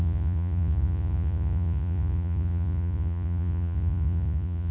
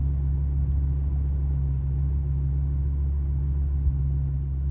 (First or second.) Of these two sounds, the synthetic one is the first